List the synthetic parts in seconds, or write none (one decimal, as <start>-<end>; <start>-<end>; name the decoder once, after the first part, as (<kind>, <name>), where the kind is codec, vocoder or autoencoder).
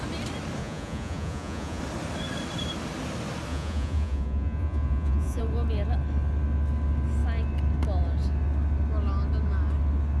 0.6-1.8 (vocoder, Vocos); 3.5-5.4